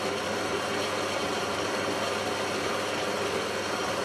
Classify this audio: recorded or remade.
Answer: recorded